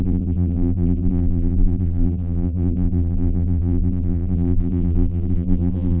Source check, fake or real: fake